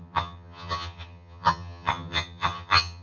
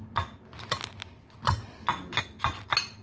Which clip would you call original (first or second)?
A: second